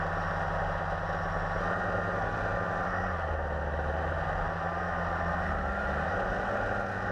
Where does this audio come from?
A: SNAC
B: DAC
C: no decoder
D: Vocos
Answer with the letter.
C